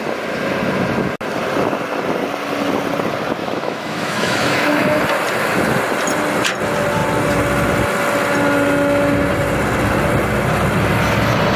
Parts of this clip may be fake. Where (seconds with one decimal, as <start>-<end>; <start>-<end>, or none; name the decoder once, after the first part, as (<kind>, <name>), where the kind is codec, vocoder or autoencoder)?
3.4-5.0 (autoencoder, DAC-VAE)